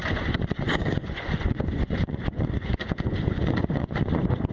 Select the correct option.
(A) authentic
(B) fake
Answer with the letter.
B